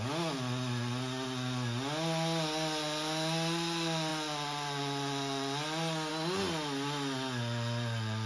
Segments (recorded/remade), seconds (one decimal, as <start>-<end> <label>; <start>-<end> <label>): 0.0-8.3 recorded